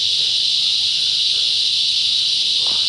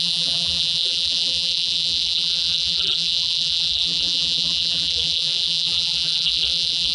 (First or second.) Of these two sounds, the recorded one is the first